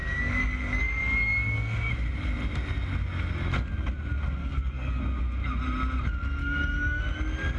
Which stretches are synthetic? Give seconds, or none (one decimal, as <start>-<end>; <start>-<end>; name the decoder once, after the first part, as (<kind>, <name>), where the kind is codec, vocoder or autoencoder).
0.0-1.9 (codec, DAC); 4.4-5.0; 6.4-7.0